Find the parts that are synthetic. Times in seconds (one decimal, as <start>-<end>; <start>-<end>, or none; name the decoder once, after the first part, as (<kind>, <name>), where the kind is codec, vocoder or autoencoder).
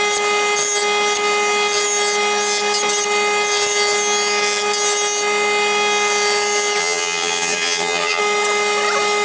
6.8-8.2 (vocoder, HiFi-GAN)